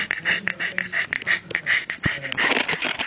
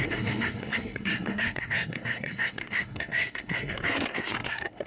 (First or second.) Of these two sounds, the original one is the first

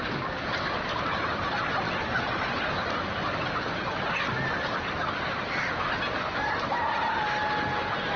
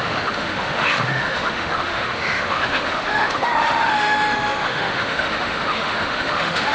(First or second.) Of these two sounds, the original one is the first